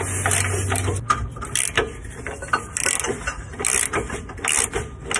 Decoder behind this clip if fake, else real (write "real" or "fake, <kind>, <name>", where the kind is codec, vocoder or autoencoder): real